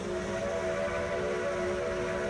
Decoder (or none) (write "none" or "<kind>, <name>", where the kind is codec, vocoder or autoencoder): none